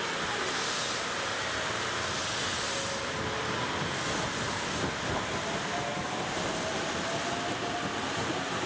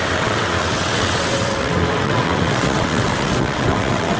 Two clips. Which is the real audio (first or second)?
first